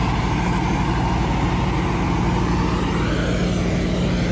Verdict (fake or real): real